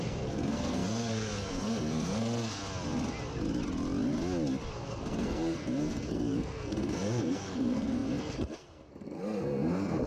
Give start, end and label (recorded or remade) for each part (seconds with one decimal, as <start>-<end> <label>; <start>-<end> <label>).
0.0-2.6 remade; 2.6-4.7 recorded; 4.7-10.1 remade

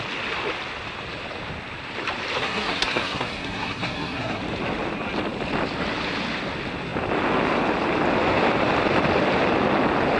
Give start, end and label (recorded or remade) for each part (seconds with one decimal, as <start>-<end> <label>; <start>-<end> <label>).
0.0-2.4 recorded; 2.4-4.4 remade; 4.4-10.2 recorded

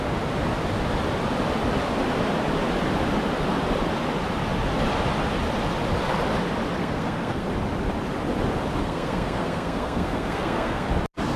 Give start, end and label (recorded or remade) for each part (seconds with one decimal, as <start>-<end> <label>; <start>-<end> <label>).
0.0-6.8 recorded; 6.8-7.5 remade; 7.5-8.8 recorded; 8.8-10.9 remade; 10.9-11.4 recorded

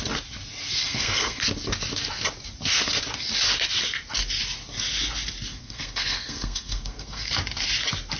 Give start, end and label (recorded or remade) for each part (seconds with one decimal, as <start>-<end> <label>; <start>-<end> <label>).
0.0-0.8 recorded; 0.8-1.4 remade; 1.4-5.5 recorded; 5.5-7.3 remade; 7.3-8.2 recorded

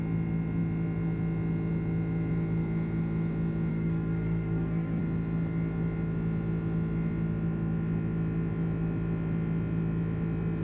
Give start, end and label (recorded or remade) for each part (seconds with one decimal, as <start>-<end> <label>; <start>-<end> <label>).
0.0-3.7 recorded; 3.7-5.0 remade; 5.0-10.6 recorded